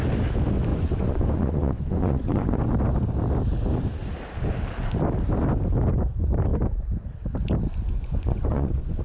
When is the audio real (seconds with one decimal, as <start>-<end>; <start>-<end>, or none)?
0.0-0.7; 2.6-7.9